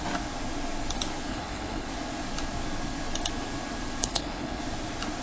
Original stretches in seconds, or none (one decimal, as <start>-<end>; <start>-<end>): 0.0-1.3; 1.9-4.0; 4.6-5.2